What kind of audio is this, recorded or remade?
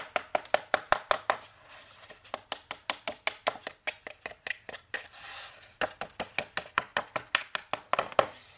recorded